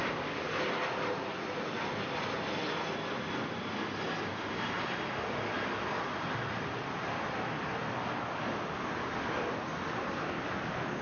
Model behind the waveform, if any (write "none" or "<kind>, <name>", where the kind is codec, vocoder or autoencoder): none